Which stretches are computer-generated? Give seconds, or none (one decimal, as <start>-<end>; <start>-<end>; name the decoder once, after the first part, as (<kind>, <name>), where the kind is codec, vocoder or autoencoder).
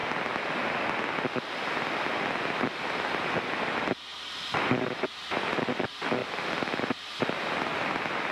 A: 2.6-4.1 (vocoder, BigVGAN v2); 4.7-8.3